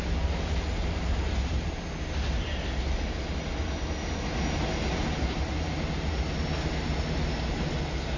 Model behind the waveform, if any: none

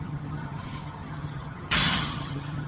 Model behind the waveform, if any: vocoder, HiFi-GAN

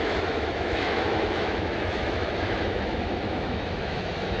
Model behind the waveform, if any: autoencoder, DAC-VAE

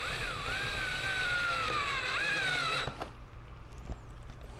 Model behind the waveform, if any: vocoder, BigVGAN v2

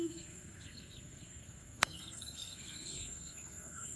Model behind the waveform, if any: codec, SNAC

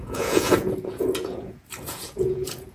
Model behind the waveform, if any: vocoder, Vocos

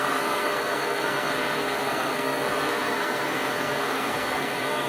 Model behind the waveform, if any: codec, SNAC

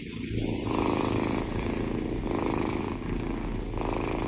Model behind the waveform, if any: none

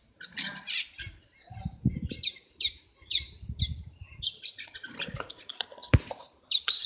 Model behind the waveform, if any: vocoder, BigVGAN v2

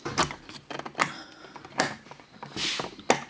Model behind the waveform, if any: none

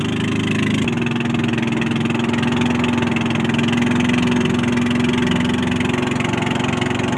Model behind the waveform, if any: none